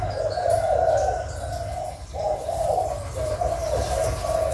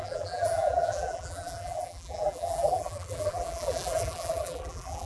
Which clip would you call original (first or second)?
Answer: first